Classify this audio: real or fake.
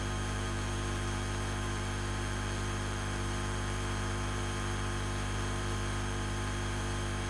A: fake